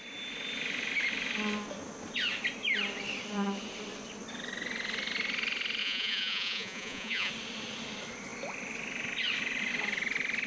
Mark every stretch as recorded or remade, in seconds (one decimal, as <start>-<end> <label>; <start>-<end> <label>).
0.0-5.8 recorded; 5.8-7.3 remade; 7.3-10.5 recorded